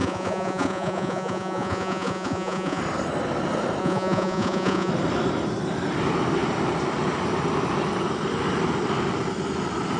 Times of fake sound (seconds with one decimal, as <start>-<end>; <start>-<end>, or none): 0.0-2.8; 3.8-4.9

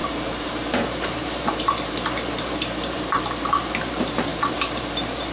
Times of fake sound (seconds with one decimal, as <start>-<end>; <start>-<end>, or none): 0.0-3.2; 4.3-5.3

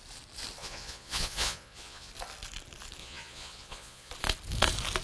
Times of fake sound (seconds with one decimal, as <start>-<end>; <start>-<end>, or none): 0.6-2.1; 3.0-4.1

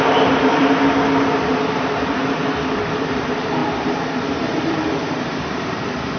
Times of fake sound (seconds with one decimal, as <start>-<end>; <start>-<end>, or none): 0.0-0.6; 1.5-2.2; 3.0-6.2